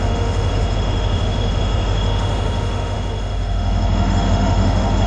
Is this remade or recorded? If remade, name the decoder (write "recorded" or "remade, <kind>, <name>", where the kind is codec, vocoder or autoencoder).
remade, autoencoder, DAC-VAE